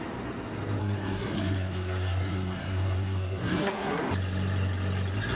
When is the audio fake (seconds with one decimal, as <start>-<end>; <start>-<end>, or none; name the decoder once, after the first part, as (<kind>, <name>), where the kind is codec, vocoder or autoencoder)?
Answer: 0.8-4.0 (codec, SNAC)